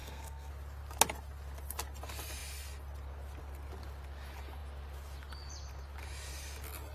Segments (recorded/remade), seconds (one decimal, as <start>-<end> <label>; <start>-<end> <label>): 0.0-0.5 remade; 0.5-6.9 recorded